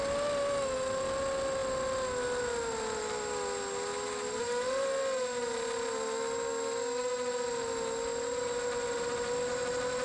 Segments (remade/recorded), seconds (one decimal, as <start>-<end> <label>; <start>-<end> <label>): 0.0-10.0 recorded

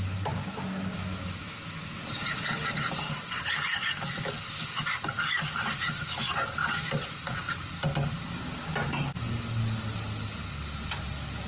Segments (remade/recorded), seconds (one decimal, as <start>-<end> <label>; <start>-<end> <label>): 0.0-1.1 recorded; 1.1-2.0 remade; 2.0-3.7 recorded; 3.7-4.3 remade; 4.3-11.5 recorded

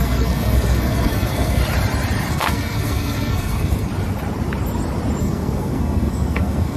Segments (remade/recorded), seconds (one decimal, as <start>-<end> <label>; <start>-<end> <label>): 0.0-1.6 remade; 1.6-2.3 recorded; 2.3-3.9 remade; 3.9-5.2 recorded; 5.2-6.8 remade

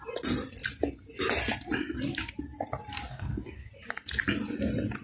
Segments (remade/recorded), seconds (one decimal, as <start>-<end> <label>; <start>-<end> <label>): 0.0-3.1 recorded; 3.1-3.7 remade; 3.7-5.0 recorded

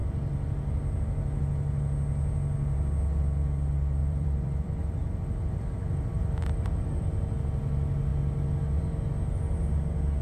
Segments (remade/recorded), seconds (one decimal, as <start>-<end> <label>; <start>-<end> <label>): 0.0-4.0 recorded; 4.0-7.1 remade; 7.1-10.2 recorded